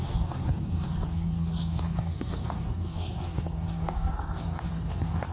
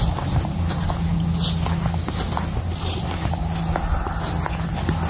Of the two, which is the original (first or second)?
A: second